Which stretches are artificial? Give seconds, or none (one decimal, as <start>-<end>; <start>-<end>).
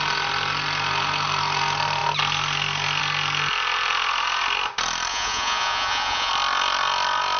5.1-6.3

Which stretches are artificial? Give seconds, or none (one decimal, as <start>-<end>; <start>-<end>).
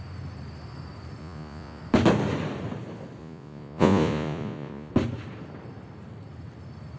1.2-1.8; 3.2-4.9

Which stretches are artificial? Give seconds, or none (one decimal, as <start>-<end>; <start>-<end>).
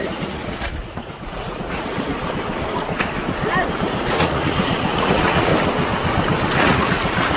0.0-2.1; 4.0-5.5; 6.6-7.4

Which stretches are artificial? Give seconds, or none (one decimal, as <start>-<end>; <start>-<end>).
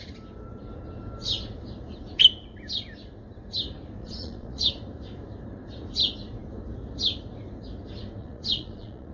4.0-4.7; 8.2-9.1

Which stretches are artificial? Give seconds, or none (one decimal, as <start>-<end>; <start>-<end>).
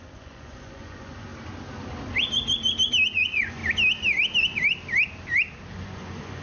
0.0-1.3; 3.1-3.6; 5.7-6.4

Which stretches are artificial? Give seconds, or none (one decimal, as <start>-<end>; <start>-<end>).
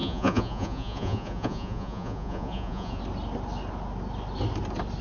0.0-3.0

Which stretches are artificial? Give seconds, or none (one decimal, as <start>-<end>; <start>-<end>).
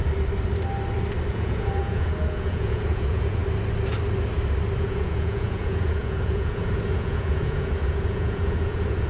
1.3-3.4; 4.8-9.1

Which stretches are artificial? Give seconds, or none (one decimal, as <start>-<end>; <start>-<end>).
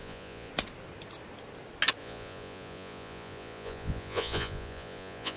0.0-0.5; 2.0-5.4